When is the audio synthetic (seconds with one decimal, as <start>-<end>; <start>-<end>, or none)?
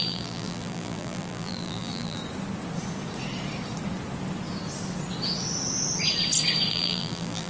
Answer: 0.0-2.2; 6.7-7.5